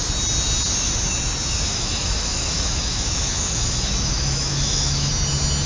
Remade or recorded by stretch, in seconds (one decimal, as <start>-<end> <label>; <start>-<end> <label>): 0.0-1.7 recorded; 1.7-5.1 remade; 5.1-5.7 recorded